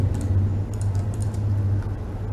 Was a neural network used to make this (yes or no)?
no